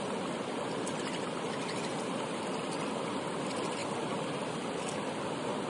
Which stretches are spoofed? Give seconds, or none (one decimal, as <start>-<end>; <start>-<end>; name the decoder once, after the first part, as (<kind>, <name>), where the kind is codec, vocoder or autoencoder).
none